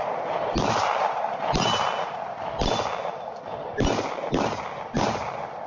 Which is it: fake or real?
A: real